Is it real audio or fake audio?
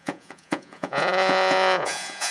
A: fake